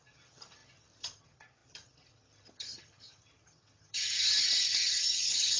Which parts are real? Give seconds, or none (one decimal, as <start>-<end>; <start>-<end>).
none